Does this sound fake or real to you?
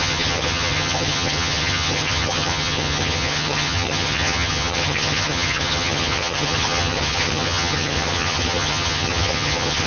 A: fake